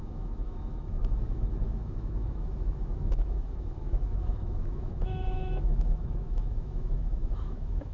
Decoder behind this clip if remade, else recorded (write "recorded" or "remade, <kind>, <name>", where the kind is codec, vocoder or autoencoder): remade, autoencoder, DAC-VAE